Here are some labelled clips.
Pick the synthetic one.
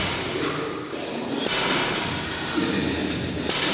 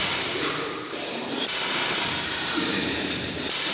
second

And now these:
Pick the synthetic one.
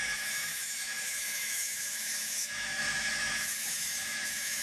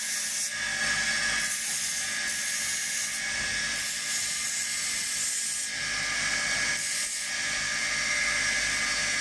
first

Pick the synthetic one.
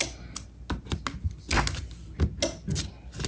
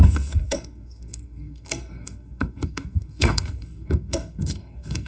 second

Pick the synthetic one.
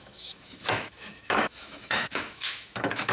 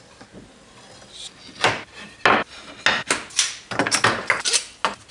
first